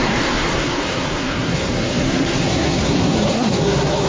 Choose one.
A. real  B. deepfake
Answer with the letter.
B